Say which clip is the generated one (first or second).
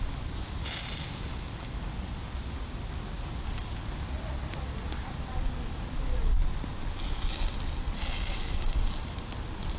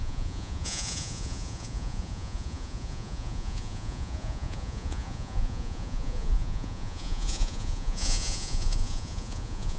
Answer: second